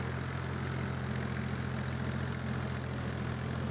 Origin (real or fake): real